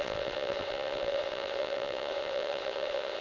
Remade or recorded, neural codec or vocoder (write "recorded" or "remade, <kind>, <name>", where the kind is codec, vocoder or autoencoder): remade, vocoder, WaveNeXt